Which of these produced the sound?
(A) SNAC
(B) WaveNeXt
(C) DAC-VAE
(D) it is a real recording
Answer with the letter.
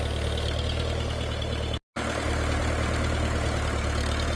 D